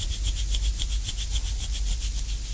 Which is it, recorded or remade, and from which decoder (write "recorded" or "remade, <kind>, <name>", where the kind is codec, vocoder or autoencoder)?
recorded